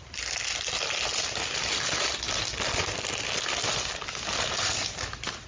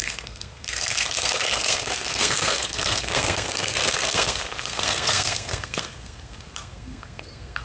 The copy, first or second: second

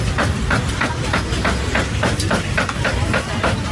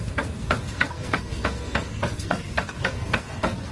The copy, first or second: second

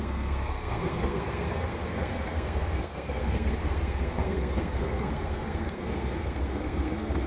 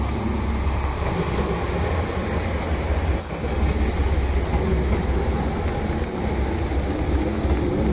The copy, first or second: first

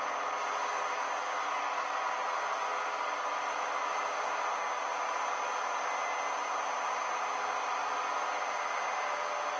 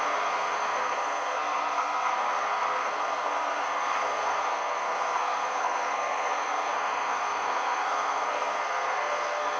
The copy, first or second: second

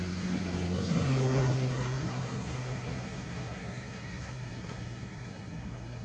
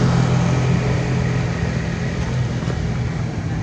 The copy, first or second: first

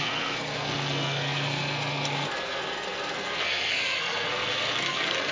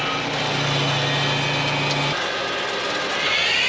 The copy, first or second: first